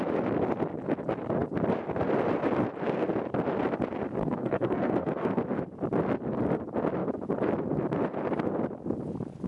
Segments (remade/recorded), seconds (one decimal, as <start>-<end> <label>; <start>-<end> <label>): 0.0-4.2 recorded; 4.2-5.4 remade; 5.4-9.5 recorded